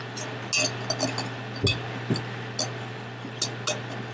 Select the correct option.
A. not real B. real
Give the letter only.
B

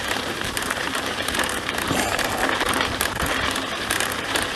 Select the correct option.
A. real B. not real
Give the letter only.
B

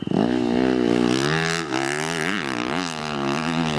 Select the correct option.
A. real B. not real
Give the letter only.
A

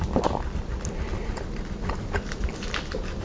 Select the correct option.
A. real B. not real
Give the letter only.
A